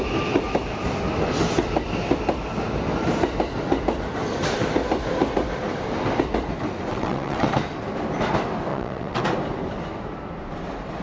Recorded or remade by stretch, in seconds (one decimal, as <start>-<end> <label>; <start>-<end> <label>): 0.0-6.9 recorded; 6.9-7.5 remade; 7.5-8.7 recorded; 8.7-9.2 remade; 9.2-11.0 recorded